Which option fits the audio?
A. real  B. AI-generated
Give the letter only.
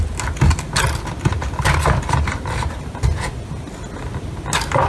A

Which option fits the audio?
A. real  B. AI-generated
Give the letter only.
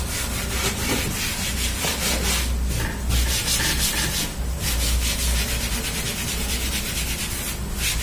A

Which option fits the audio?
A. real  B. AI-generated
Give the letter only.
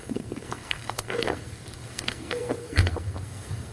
B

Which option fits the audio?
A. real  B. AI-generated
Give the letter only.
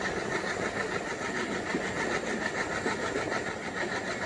A